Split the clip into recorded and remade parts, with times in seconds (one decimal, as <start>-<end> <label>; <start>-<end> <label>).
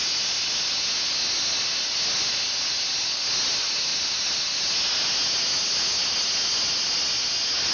0.0-7.7 recorded